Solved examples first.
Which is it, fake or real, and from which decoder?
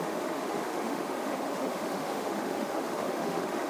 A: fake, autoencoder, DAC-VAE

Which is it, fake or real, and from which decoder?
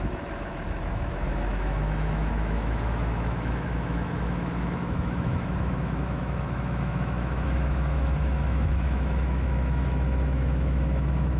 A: fake, autoencoder, DAC-VAE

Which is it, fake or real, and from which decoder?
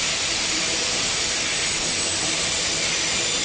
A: real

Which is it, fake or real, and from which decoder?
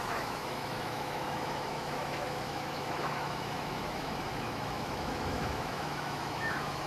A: fake, autoencoder, DAC-VAE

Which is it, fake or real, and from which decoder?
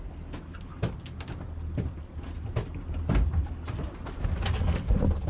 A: real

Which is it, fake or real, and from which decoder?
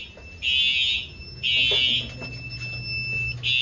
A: real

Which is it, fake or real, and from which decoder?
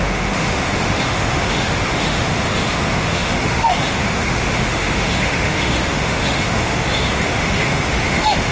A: fake, autoencoder, DAC-VAE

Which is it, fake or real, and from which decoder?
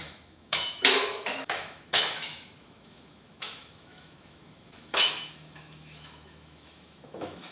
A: fake, autoencoder, DAC-VAE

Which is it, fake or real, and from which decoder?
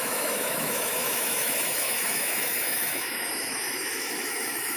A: fake, autoencoder, DAC-VAE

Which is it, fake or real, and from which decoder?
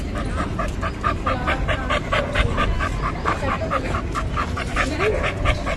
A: real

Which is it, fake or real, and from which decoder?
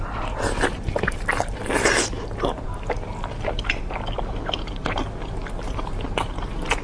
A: real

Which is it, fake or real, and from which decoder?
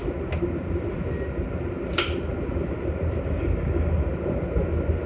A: real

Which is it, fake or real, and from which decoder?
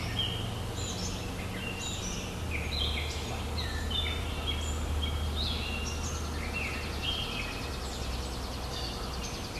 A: real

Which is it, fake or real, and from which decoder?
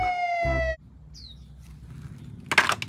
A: real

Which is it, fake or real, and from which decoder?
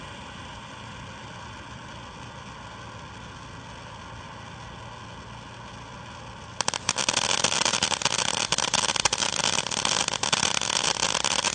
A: real